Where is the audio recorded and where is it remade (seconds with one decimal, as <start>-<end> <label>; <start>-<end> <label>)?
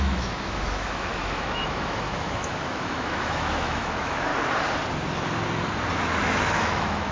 0.0-4.3 remade; 4.3-5.9 recorded; 5.9-7.1 remade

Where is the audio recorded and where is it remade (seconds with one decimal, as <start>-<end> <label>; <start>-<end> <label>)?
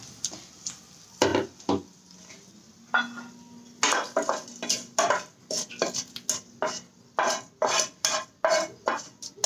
0.0-9.5 recorded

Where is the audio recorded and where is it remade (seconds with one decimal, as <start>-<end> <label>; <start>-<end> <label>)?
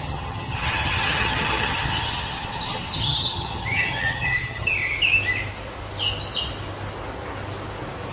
0.0-4.7 remade; 4.7-8.1 recorded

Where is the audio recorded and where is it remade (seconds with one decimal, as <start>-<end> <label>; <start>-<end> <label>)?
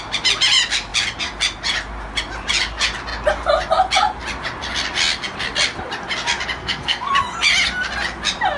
0.0-6.6 recorded; 6.6-7.1 remade; 7.1-8.6 recorded